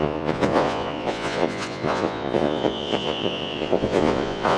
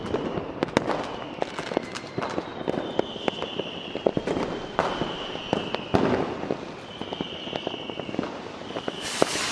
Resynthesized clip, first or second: first